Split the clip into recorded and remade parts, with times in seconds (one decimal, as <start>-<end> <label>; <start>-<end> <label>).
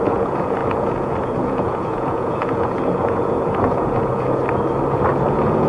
0.0-4.4 remade; 4.4-5.1 recorded; 5.1-5.7 remade